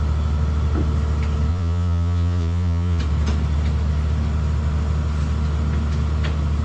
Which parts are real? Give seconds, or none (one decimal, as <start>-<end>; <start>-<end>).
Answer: 0.0-1.5; 3.0-6.6